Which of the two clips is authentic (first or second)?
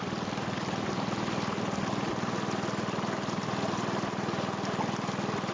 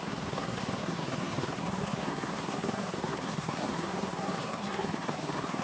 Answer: first